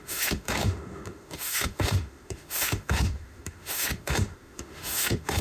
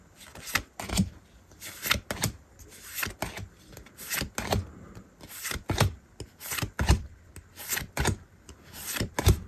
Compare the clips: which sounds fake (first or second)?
first